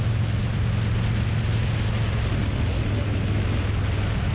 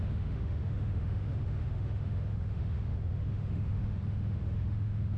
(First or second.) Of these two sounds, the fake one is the second